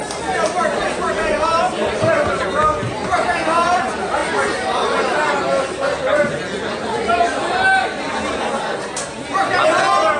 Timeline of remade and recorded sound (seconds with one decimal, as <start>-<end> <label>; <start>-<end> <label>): 0.0-3.0 recorded; 3.0-3.8 remade; 3.8-4.2 recorded; 4.2-5.6 remade; 5.6-10.2 recorded